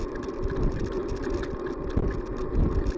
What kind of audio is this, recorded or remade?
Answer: recorded